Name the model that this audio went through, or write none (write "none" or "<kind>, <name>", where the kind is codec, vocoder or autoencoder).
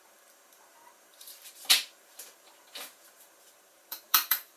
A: vocoder, BigVGAN v2